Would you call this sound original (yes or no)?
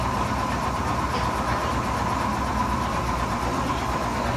yes